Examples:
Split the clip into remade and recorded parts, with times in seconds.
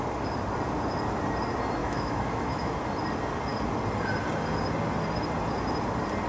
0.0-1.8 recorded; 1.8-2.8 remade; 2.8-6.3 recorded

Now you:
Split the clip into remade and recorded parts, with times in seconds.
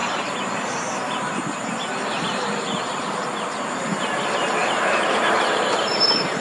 0.0-4.6 recorded; 4.6-6.4 remade